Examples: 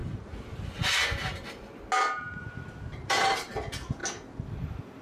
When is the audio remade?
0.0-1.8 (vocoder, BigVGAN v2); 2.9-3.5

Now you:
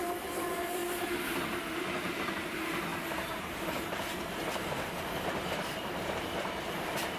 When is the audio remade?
0.0-0.8 (vocoder, BigVGAN v2); 1.8-7.2

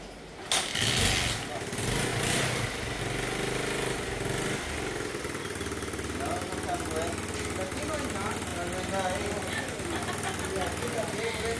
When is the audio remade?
none